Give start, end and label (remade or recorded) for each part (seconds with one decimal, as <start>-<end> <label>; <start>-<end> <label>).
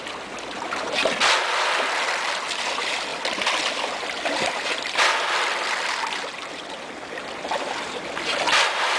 0.0-9.0 recorded